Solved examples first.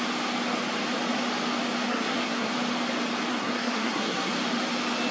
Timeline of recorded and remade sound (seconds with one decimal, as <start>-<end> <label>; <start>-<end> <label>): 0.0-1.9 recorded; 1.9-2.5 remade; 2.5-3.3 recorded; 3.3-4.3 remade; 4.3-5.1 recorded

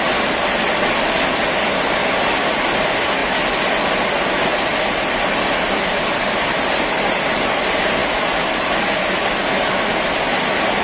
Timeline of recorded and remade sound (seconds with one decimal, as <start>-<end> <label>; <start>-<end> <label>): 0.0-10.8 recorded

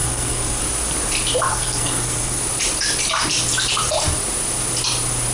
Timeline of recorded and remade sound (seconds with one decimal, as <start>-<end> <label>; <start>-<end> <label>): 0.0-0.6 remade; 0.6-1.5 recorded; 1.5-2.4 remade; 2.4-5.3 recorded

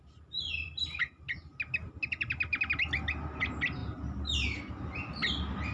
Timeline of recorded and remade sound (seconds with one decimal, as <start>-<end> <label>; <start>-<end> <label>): 0.0-5.7 recorded

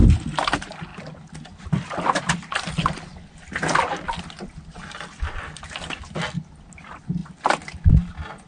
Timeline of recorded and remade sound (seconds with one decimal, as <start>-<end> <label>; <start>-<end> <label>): 0.0-8.5 recorded

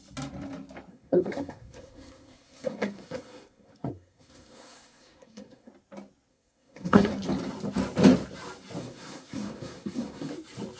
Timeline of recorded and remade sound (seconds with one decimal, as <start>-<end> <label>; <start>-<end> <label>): 0.0-0.9 recorded; 0.9-5.7 remade; 5.7-6.3 recorded; 6.3-7.1 remade; 7.1-8.8 recorded; 8.8-10.3 remade; 10.3-10.8 recorded

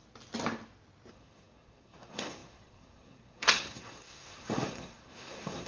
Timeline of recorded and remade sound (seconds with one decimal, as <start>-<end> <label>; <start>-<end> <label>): 0.0-1.1 recorded; 1.1-5.7 remade

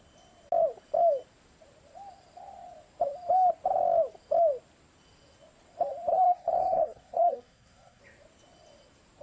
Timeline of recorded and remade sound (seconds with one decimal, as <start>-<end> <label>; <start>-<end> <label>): 0.0-6.1 recorded; 6.1-8.0 remade; 8.0-9.2 recorded